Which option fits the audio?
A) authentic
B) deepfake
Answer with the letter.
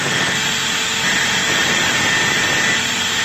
A